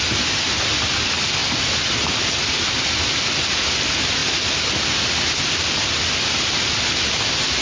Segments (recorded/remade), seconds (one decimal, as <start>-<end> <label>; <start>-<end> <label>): 0.0-7.6 recorded